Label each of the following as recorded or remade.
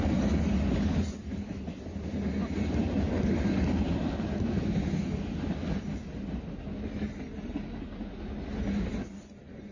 recorded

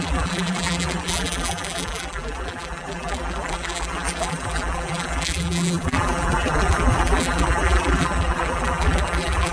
remade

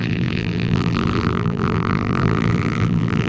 remade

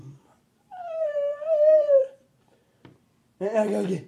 remade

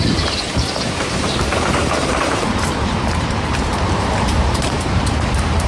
remade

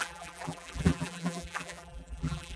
remade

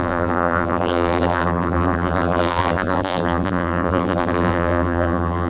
remade